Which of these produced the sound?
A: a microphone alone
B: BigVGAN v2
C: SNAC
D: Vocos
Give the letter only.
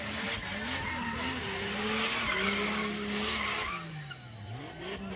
A